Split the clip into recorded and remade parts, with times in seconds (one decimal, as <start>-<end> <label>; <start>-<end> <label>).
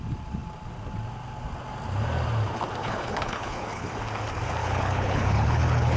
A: 0.0-2.8 recorded; 2.8-3.9 remade; 3.9-4.6 recorded; 4.6-6.0 remade